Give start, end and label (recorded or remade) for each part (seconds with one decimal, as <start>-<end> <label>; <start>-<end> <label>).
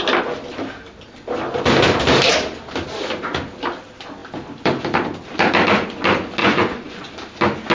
0.0-6.4 recorded; 6.4-7.1 remade; 7.1-7.7 recorded